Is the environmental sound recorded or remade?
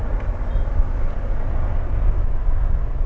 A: recorded